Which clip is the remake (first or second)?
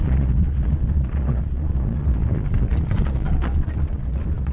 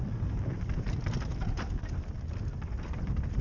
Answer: first